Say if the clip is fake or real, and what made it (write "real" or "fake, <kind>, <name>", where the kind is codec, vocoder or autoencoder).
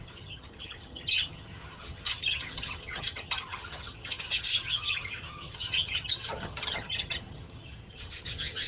fake, vocoder, HiFi-GAN